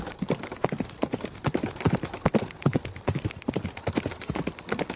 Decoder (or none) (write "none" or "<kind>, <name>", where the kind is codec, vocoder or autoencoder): none